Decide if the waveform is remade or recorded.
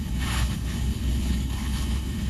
remade